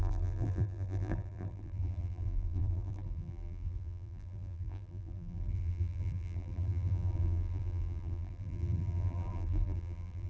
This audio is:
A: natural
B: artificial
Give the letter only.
B